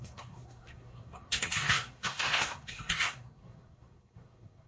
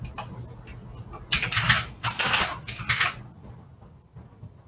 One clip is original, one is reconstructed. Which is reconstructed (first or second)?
first